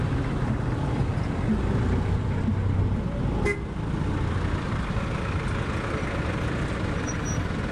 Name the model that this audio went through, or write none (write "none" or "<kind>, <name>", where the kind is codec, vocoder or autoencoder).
none